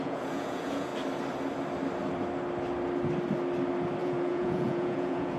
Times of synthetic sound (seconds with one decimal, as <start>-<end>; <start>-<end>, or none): 0.0-0.9; 4.0-5.4